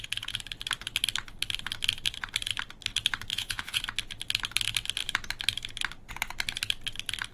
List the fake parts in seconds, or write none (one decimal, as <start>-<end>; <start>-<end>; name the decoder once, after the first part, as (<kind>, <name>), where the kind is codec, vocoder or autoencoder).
3.3-3.8 (vocoder, Vocos)